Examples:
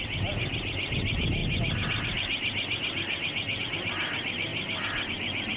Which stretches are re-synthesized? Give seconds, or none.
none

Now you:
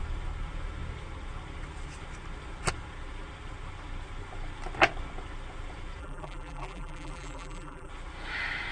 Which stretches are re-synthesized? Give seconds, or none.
6.0-7.9 (vocoder, BigVGAN v2)